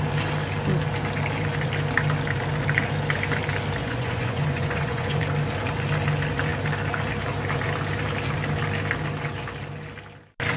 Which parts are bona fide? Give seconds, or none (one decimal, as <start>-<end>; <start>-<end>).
0.0-3.8; 5.2-10.6